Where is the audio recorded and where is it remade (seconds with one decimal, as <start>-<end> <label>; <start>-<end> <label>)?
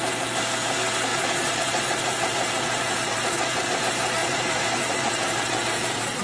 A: 0.0-1.1 recorded; 1.1-3.8 remade; 3.8-4.2 recorded; 4.2-6.2 remade